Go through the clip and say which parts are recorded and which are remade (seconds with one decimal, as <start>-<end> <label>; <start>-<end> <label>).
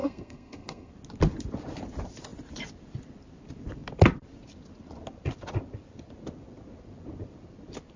0.0-0.9 remade; 0.9-8.0 recorded